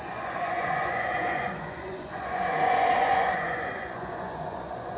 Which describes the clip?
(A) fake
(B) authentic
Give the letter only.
A